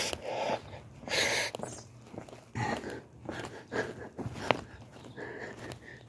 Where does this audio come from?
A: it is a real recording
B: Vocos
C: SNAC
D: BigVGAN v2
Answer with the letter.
A